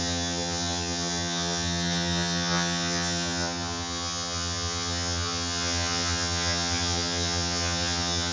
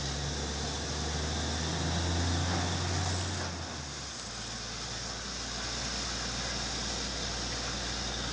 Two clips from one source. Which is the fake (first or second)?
first